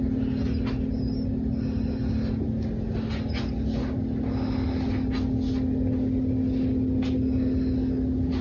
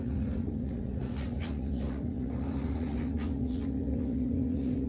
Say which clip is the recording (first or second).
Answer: first